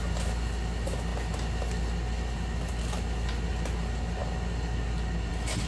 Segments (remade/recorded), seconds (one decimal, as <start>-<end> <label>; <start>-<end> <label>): 0.0-5.7 recorded